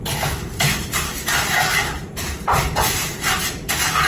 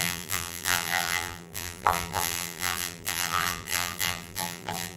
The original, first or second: first